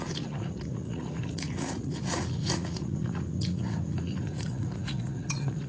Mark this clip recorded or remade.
remade